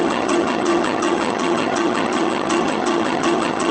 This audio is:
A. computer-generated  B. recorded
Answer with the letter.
A